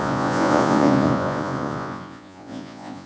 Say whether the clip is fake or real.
fake